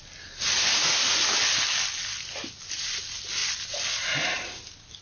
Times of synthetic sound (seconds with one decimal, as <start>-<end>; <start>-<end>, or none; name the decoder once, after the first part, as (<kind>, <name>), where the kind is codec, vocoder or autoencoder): none